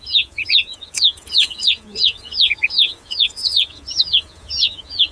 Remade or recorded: remade